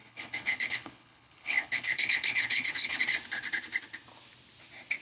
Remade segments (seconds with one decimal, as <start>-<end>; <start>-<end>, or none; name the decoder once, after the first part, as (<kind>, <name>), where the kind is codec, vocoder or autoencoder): 0.0-3.0 (codec, HILCodec)